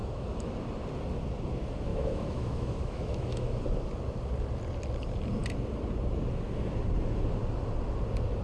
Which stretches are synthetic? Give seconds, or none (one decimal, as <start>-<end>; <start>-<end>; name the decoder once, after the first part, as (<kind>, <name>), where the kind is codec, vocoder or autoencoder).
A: 0.0-0.5 (autoencoder, DAC-VAE); 1.9-3.6